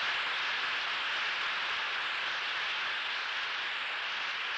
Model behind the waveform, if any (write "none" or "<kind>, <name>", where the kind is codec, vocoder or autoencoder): none